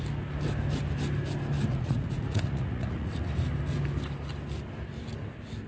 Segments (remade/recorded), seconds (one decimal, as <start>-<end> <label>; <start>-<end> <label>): 0.0-1.7 recorded; 1.7-3.1 remade; 3.1-5.7 recorded

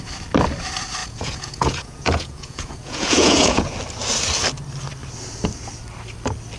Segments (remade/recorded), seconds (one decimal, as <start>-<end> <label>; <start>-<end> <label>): 0.0-1.0 recorded; 1.0-3.7 remade; 3.7-6.6 recorded

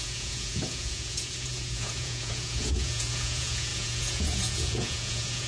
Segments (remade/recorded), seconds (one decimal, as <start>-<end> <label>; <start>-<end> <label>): 0.0-5.5 remade

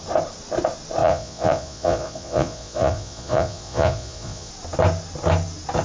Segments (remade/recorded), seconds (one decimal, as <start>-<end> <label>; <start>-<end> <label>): 0.0-1.0 recorded; 1.0-4.5 remade; 4.5-5.8 recorded

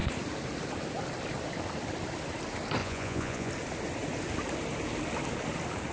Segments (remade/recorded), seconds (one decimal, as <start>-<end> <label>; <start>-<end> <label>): 0.0-2.8 recorded; 2.8-3.5 remade; 3.5-5.9 recorded

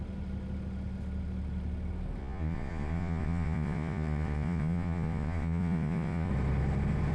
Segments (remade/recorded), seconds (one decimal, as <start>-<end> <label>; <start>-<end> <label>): 0.0-2.2 recorded; 2.2-6.3 remade; 6.3-7.1 recorded

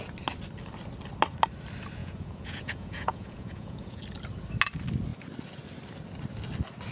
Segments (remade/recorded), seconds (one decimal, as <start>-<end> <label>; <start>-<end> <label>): 0.0-2.0 recorded; 2.0-4.0 remade; 4.0-6.9 recorded

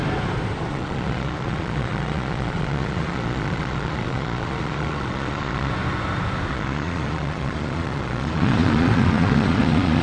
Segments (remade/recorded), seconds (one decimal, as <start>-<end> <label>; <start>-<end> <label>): 0.0-0.7 recorded; 0.7-5.7 remade; 5.7-6.5 recorded; 6.5-10.0 remade